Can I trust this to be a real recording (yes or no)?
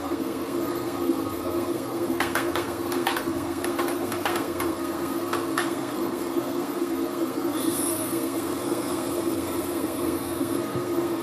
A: no